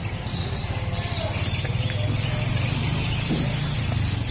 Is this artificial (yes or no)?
no